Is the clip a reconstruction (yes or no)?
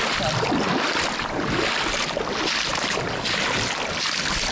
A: no